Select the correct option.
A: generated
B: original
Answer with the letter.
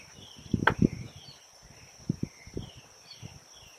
B